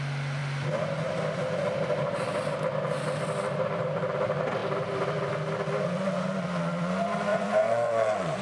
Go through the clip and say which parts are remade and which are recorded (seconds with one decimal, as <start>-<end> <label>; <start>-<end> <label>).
0.0-7.3 recorded; 7.3-8.4 remade